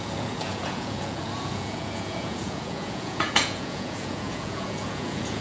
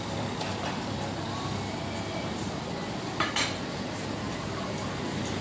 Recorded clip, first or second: second